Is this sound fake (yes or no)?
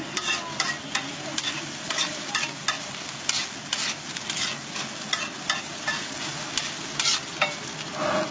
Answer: no